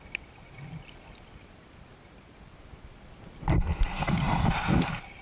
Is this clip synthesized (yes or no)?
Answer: no